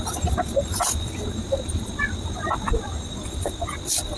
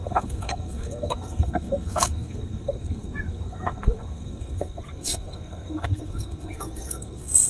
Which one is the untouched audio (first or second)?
first